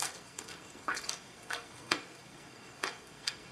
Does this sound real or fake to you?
fake